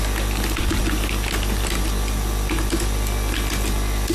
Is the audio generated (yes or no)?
no